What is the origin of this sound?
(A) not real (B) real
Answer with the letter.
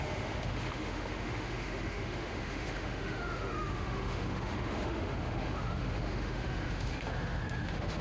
A